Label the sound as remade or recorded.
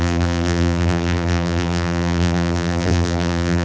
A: remade